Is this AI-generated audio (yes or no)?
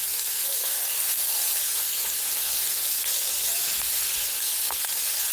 yes